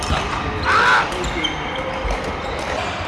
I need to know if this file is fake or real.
real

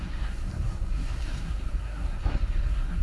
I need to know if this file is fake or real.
fake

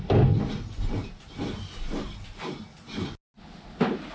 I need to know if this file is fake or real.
real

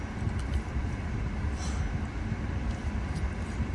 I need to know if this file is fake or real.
real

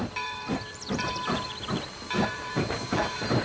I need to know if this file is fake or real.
fake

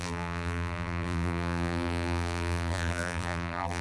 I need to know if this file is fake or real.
fake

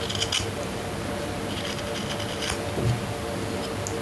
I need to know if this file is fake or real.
real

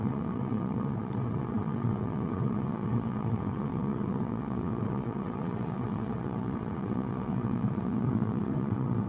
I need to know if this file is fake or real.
fake